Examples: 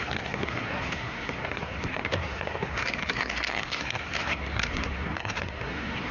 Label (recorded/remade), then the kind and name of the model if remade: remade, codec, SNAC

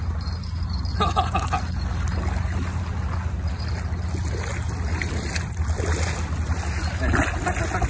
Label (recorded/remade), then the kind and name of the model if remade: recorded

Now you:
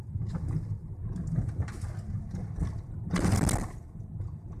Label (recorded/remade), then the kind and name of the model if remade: recorded